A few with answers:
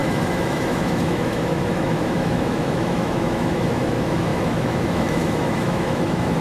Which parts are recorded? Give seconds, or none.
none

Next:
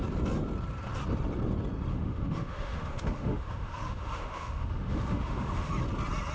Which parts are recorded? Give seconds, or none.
0.0-1.9; 5.7-6.3

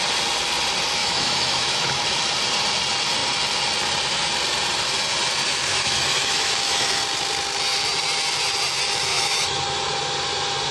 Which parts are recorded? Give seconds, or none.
0.0-1.0; 2.0-5.7; 7.0-9.1; 9.6-10.7